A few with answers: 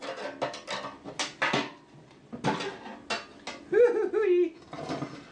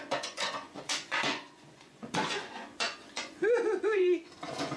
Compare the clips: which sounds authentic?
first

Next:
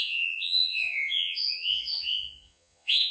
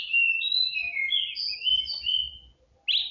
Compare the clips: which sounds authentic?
second